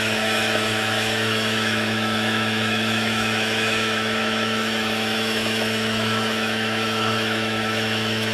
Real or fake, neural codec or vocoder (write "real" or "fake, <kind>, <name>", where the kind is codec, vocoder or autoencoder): fake, autoencoder, DAC-VAE